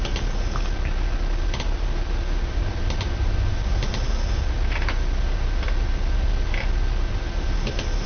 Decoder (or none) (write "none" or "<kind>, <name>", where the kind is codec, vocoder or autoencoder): none